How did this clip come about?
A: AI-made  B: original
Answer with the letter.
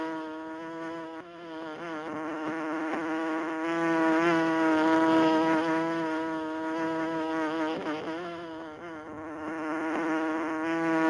A